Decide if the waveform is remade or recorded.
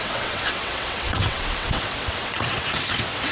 remade